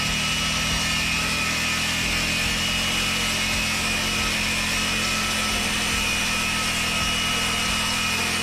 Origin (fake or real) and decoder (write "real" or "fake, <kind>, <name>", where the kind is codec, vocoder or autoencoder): real